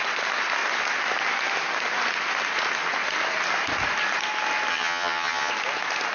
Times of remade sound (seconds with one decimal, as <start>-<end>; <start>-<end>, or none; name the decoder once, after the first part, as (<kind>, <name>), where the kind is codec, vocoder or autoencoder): 4.7-5.5 (vocoder, HiFi-GAN)